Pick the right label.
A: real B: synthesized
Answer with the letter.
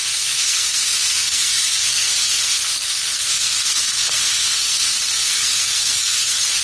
B